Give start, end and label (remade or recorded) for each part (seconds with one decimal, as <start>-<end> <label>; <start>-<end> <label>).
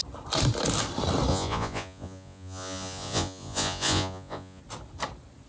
0.0-1.3 recorded; 1.3-4.6 remade; 4.6-5.5 recorded